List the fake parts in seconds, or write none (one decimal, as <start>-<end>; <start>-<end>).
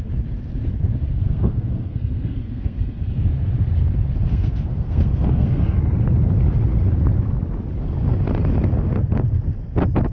1.1-3.4; 4.3-5.8